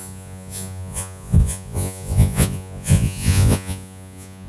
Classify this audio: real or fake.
fake